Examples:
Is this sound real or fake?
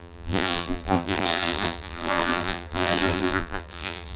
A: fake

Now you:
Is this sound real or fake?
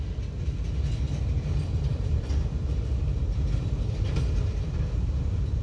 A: real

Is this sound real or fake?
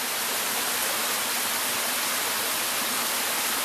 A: real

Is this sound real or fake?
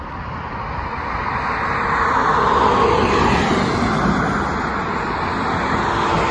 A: real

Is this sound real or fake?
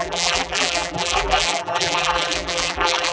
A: fake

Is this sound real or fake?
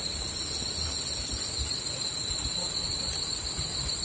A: real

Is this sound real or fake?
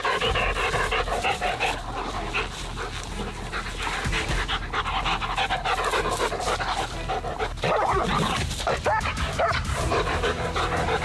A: real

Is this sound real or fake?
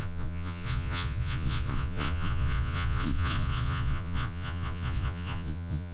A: fake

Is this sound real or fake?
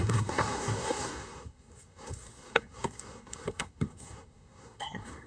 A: fake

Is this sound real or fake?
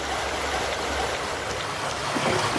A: real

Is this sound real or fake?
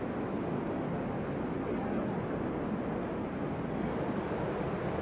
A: real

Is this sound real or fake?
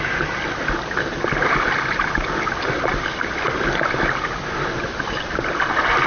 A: real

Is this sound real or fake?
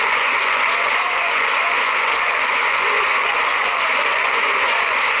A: fake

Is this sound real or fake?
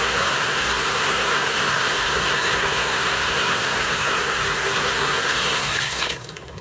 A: fake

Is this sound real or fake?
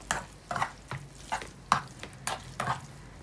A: real